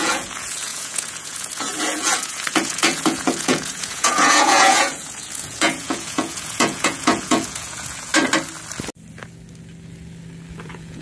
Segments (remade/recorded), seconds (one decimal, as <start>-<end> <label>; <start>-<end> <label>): 0.0-8.1 remade; 8.1-10.5 recorded; 10.5-11.0 remade